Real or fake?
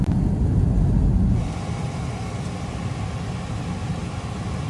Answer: real